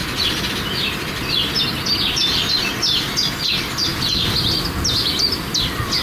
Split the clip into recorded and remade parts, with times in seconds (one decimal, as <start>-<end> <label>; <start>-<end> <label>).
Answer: 0.0-6.0 recorded

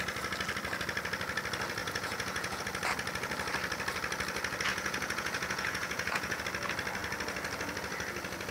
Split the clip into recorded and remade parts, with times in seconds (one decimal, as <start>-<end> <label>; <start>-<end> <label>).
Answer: 0.0-1.8 recorded; 1.8-2.6 remade; 2.6-4.7 recorded; 4.7-6.4 remade; 6.4-8.5 recorded

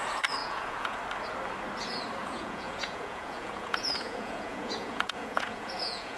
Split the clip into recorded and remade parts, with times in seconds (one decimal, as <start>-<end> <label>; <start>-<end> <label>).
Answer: 0.0-0.4 recorded; 0.4-1.0 remade; 1.0-2.2 recorded; 2.2-6.2 remade

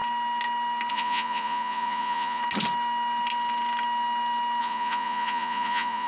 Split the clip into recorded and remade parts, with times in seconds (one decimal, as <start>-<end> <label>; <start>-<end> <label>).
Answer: 0.0-0.9 recorded; 0.9-2.4 remade; 2.4-4.6 recorded; 4.6-6.1 remade